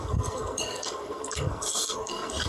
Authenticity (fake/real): fake